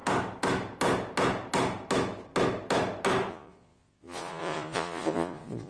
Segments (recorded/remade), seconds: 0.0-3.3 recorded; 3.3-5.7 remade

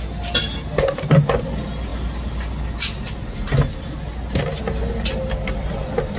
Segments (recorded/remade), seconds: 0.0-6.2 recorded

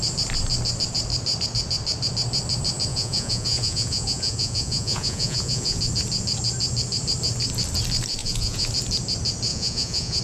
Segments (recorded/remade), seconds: 0.0-2.9 recorded; 2.9-5.8 remade; 5.8-8.2 recorded; 8.2-8.7 remade; 8.7-9.5 recorded; 9.5-10.2 remade

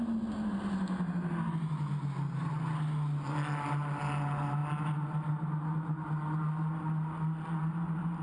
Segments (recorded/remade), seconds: 0.0-8.2 recorded